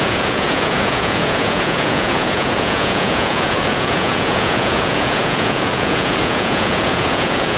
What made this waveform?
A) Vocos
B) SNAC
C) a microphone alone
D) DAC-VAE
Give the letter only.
A